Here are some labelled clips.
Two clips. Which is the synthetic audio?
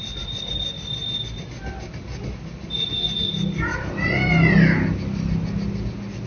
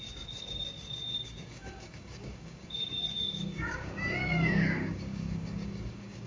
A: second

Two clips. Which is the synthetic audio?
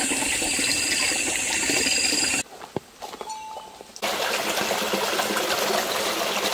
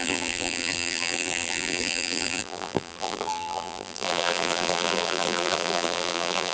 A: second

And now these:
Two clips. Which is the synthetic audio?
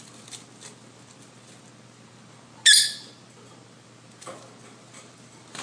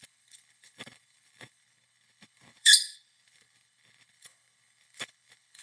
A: second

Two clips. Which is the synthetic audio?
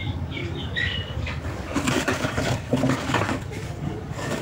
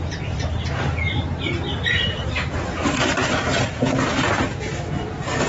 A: first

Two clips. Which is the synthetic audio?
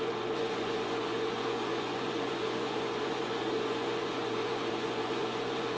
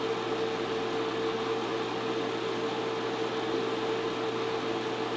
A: first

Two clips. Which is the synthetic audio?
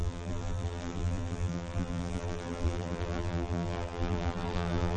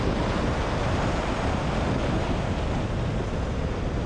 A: first